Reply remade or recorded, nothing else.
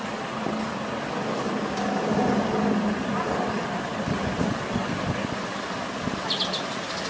recorded